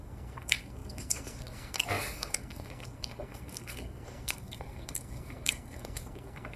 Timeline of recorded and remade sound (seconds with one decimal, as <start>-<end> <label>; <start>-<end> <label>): 0.0-6.6 remade